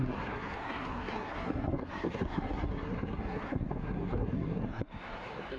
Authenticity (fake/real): fake